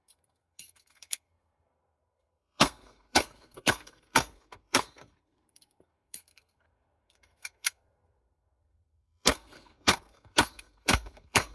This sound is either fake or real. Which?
fake